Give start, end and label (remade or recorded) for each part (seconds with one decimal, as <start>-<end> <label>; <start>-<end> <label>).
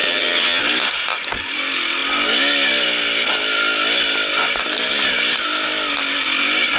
0.0-0.6 remade; 0.6-6.8 recorded